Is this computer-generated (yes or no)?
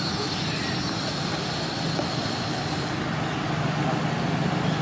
no